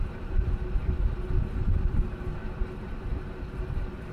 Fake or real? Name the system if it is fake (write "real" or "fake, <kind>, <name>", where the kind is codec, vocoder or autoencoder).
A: fake, vocoder, BigVGAN v2